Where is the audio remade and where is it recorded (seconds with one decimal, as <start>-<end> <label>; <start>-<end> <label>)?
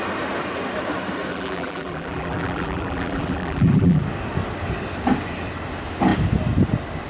0.0-1.3 recorded; 1.3-4.0 remade; 4.0-7.1 recorded